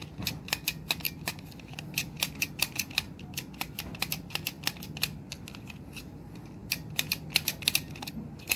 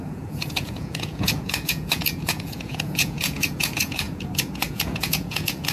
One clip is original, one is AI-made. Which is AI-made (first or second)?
second